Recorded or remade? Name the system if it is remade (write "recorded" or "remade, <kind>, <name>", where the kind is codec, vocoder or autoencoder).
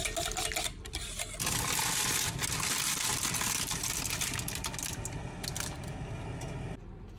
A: recorded